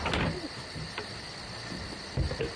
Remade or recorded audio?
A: recorded